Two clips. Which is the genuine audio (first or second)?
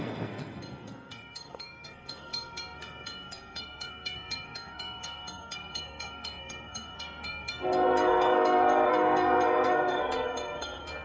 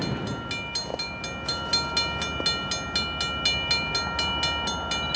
second